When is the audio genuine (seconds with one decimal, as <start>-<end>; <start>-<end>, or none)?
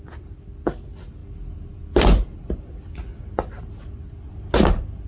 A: 0.0-5.1